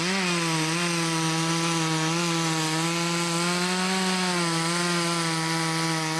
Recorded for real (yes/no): yes